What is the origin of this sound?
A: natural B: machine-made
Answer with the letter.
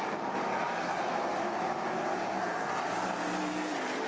A